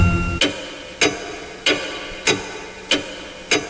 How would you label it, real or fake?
real